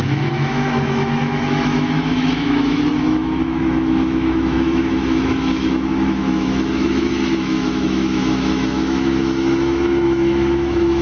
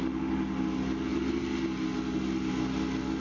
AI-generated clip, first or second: first